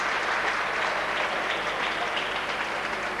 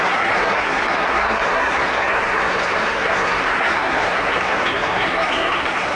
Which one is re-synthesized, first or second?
second